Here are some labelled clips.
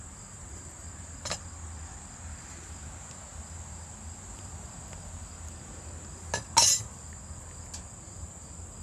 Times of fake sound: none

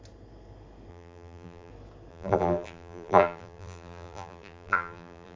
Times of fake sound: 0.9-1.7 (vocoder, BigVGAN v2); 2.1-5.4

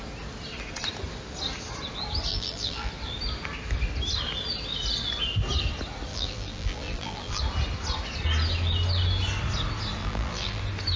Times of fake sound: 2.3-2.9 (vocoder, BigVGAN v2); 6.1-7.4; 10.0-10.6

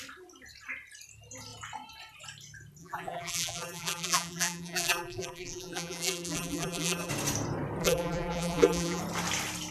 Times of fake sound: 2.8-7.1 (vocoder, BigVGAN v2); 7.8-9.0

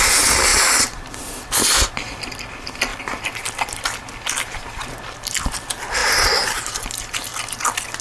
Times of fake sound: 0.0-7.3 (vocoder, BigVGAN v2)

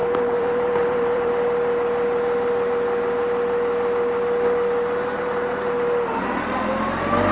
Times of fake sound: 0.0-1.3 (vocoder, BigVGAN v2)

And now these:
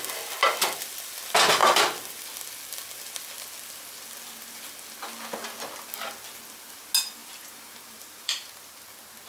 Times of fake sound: 7.2-8.7 (vocoder, BigVGAN v2)